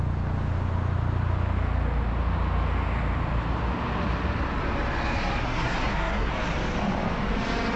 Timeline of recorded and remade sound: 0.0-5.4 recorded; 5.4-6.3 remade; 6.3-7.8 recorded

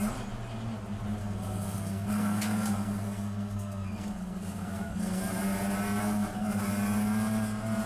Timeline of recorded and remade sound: 0.0-1.2 recorded; 1.2-5.2 remade; 5.2-6.0 recorded; 6.0-6.7 remade; 6.7-7.9 recorded

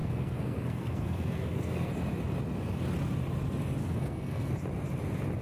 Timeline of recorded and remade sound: 0.0-1.9 remade; 1.9-3.8 recorded; 3.8-4.5 remade; 4.5-5.4 recorded

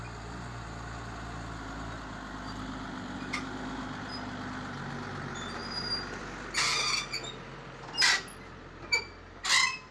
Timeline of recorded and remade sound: 0.0-9.9 recorded

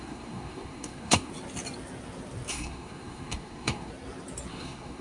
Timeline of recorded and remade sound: 0.0-1.3 remade; 1.3-2.5 recorded; 2.5-3.9 remade; 3.9-4.5 recorded; 4.5-5.0 remade

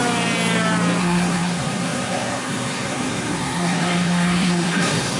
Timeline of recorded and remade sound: 0.0-1.0 recorded; 1.0-5.2 remade

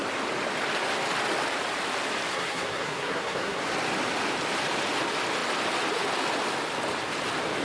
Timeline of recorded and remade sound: 0.0-2.3 recorded; 2.3-3.6 remade; 3.6-7.6 recorded